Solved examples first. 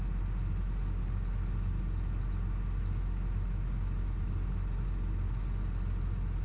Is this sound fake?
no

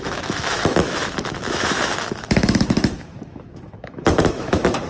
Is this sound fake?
yes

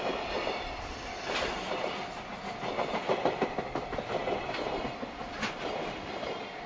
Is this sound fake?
no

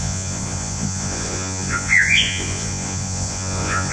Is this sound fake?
yes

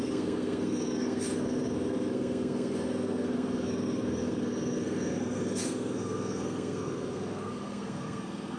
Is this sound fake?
yes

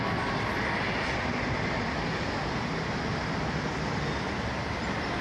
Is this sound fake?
no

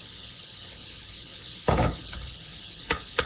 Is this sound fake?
yes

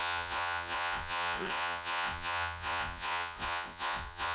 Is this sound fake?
yes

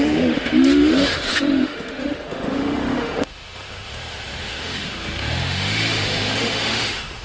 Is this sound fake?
yes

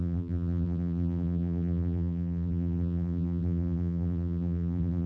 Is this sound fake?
yes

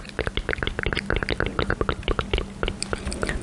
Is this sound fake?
no